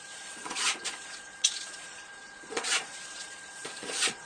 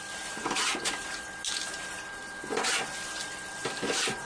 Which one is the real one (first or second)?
second